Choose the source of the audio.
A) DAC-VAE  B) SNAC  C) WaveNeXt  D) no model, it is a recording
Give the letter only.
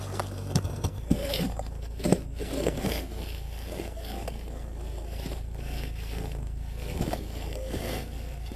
B